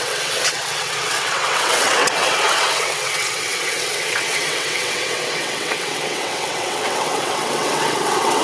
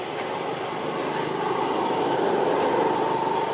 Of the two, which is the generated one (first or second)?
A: first